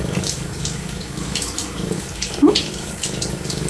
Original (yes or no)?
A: no